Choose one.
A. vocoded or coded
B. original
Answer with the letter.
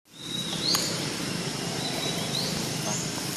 B